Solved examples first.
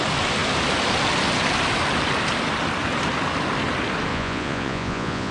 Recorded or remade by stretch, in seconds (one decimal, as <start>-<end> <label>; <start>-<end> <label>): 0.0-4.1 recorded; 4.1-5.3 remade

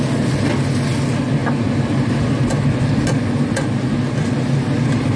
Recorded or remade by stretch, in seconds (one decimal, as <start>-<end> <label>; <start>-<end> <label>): 0.0-5.2 recorded

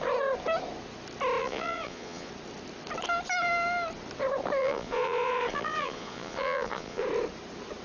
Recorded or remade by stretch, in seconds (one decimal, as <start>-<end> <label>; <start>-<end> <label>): 0.0-1.4 recorded; 1.4-2.3 remade; 2.3-4.6 recorded; 4.6-7.0 remade; 7.0-7.8 recorded

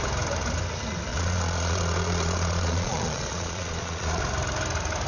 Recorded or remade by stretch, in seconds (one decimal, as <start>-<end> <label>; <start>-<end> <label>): 0.0-1.1 recorded; 1.1-4.2 remade; 4.2-5.1 recorded

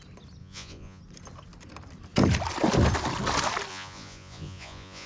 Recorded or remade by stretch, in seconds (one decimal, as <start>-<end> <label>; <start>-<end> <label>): 0.0-0.4 recorded; 0.4-1.0 remade; 1.0-3.7 recorded; 3.7-5.1 remade

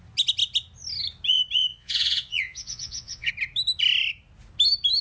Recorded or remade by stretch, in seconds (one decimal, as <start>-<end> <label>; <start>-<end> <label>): 0.0-1.7 recorded; 1.7-3.3 remade; 3.3-5.0 recorded